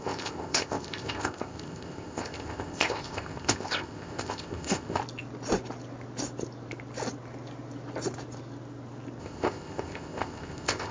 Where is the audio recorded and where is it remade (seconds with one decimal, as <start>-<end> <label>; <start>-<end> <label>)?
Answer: 0.0-5.0 remade; 5.0-9.2 recorded; 9.2-10.9 remade